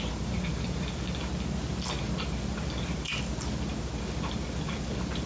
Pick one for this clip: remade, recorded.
recorded